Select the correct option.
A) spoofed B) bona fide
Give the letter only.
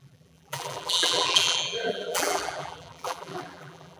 A